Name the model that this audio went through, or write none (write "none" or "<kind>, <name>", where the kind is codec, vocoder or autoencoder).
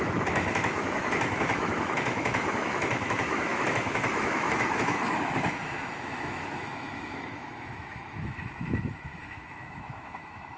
autoencoder, DAC-VAE